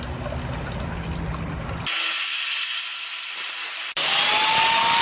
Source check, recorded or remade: recorded